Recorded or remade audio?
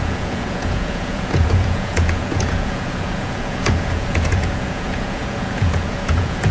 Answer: remade